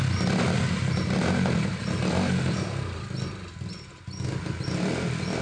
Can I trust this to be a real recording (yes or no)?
yes